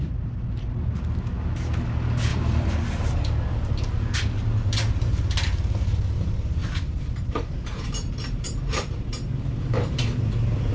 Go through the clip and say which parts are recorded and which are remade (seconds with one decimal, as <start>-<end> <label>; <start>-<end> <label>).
0.0-2.3 recorded; 2.3-4.0 remade; 4.0-6.6 recorded; 6.6-10.7 remade